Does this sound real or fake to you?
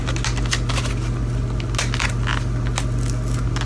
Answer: real